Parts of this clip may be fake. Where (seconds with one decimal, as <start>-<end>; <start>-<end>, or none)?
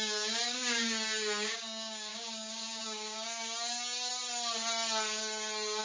0.0-4.1